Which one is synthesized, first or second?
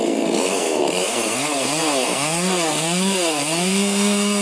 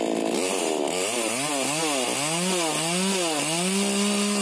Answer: first